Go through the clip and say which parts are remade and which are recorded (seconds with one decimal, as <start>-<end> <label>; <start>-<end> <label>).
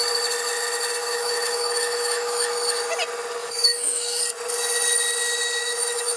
0.0-1.0 recorded; 1.0-2.5 remade; 2.5-3.4 recorded; 3.4-4.2 remade; 4.2-5.6 recorded; 5.6-6.2 remade